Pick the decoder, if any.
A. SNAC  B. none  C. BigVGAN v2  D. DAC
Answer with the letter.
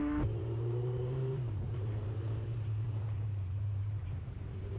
C